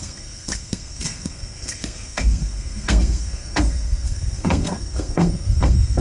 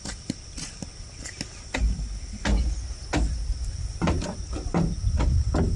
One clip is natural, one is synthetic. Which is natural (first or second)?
second